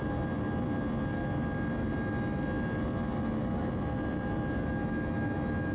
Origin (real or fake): real